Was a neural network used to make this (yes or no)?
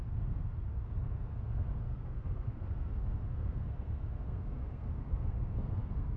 yes